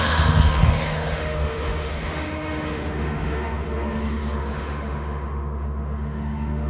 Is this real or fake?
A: fake